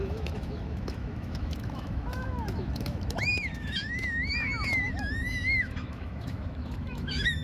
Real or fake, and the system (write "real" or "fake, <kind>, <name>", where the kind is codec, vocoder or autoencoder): fake, autoencoder, DAC-VAE